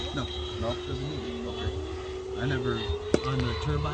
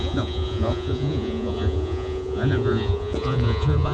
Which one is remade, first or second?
second